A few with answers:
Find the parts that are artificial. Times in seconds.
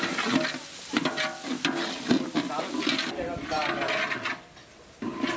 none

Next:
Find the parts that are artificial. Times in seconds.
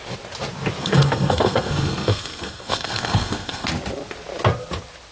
0.8-3.7 (codec, SNAC)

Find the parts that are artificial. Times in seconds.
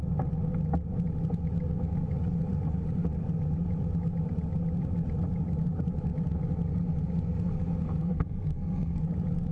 8.0-9.0 (codec, SNAC)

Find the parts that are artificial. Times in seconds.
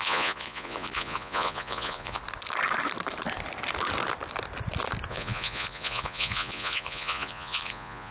0.0-2.2 (vocoder, Vocos); 5.1-8.1